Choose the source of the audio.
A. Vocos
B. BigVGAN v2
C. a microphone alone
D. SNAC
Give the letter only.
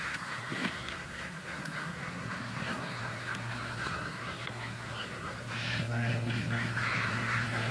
D